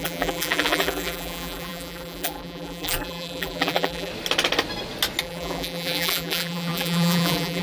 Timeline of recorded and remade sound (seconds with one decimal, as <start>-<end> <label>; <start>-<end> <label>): 0.0-4.1 remade; 4.1-5.2 recorded; 5.2-7.6 remade